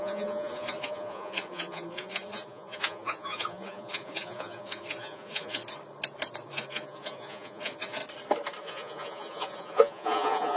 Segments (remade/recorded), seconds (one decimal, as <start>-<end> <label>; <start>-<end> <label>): 0.0-5.6 remade; 5.6-6.5 recorded; 6.5-8.0 remade; 8.0-8.6 recorded; 8.6-10.6 remade